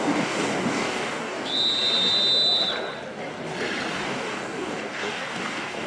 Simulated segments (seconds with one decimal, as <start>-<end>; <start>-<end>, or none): 0.0-1.5; 3.9-5.9